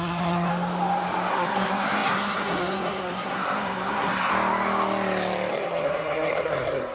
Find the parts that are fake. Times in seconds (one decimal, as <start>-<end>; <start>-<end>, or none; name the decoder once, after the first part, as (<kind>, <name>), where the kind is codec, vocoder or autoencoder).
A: 0.0-0.5 (codec, SNAC); 1.3-4.3; 5.5-6.9